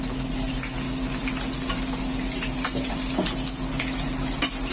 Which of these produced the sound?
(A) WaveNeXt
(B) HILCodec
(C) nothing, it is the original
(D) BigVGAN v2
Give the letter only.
C